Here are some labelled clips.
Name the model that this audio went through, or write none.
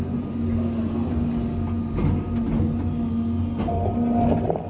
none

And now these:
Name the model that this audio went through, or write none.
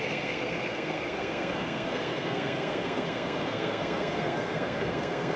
codec, SNAC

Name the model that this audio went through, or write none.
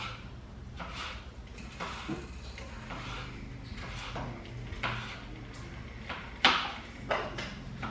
none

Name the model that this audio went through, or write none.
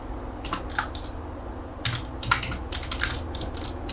none